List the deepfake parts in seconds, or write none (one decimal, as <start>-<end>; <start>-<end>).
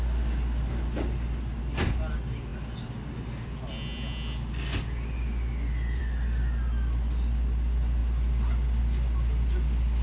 none